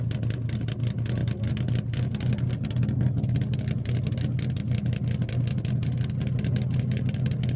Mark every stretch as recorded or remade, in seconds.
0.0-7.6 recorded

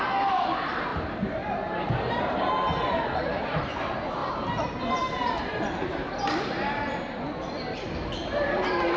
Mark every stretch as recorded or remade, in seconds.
0.0-0.9 recorded; 0.9-2.2 remade; 2.2-4.2 recorded; 4.2-6.8 remade; 6.8-8.2 recorded; 8.2-9.0 remade

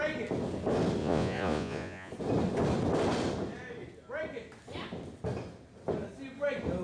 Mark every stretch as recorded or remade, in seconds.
0.0-1.0 recorded; 1.0-2.1 remade; 2.1-6.8 recorded

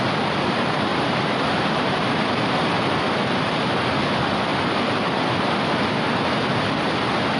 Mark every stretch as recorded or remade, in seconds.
0.0-0.9 recorded; 0.9-3.1 remade; 3.1-4.5 recorded; 4.5-5.2 remade; 5.2-7.4 recorded

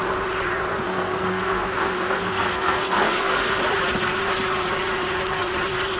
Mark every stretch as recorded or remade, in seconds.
0.0-0.7 recorded; 0.7-3.6 remade; 3.6-6.0 recorded

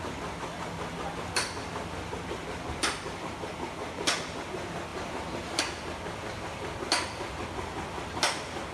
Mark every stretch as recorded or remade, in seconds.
0.0-8.7 recorded